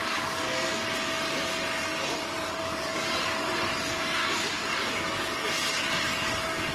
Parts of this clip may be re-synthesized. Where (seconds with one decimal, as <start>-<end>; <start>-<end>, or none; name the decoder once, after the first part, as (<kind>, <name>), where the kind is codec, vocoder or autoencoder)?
0.0-0.7 (codec, DAC); 2.6-3.5; 4.2-6.7